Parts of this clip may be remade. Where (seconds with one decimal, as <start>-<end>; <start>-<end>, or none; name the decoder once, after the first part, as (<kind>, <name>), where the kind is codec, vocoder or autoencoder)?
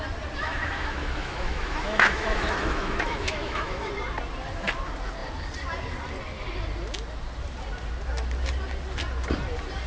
0.4-3.9 (autoencoder, DAC-VAE)